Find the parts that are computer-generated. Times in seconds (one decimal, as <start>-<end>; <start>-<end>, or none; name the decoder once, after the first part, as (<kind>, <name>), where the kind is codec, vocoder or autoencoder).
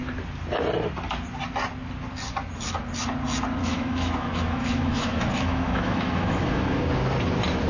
3.6-6.8 (autoencoder, DAC-VAE)